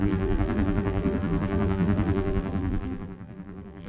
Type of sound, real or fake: fake